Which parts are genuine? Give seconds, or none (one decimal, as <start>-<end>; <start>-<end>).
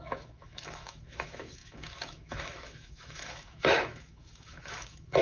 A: none